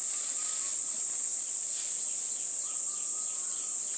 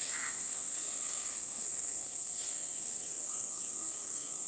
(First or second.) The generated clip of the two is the second